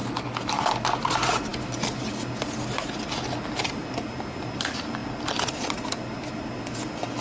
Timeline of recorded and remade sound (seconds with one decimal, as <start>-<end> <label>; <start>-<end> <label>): 0.0-0.7 remade; 0.7-7.2 recorded